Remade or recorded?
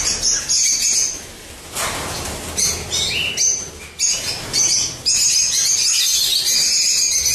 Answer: recorded